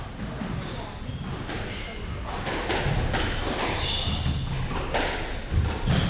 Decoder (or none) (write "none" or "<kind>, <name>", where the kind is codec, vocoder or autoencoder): none